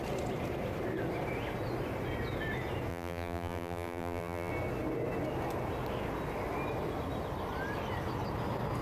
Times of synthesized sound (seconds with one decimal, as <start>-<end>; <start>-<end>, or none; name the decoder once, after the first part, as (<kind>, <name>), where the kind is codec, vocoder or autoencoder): 2.9-4.5 (vocoder, BigVGAN v2)